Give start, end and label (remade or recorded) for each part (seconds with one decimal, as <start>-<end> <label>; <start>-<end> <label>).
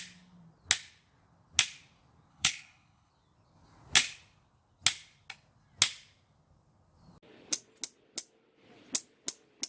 0.0-2.3 recorded; 2.3-3.1 remade; 3.1-9.7 recorded